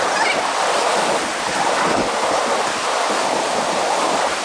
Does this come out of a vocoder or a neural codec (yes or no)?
no